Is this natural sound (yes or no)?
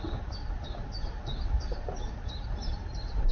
yes